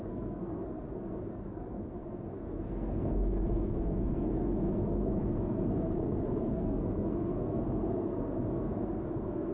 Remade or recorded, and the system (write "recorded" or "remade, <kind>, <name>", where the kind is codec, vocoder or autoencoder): remade, codec, SNAC